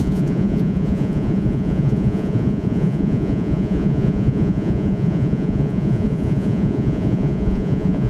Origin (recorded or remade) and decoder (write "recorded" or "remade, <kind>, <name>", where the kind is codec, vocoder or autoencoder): remade, vocoder, Vocos